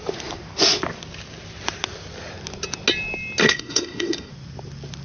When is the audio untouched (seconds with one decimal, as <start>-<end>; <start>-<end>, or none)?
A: 0.0-3.4; 4.3-5.0